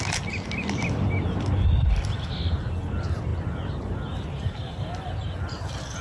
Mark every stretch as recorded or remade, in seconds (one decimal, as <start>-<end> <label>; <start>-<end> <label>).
0.0-6.0 recorded